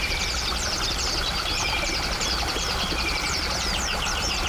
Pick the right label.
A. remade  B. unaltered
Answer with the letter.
A